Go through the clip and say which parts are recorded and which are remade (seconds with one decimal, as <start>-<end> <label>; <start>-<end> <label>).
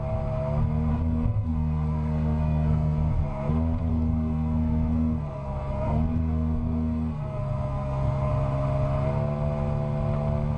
0.0-0.9 recorded; 0.9-3.5 remade; 3.5-3.9 recorded; 3.9-8.3 remade; 8.3-10.6 recorded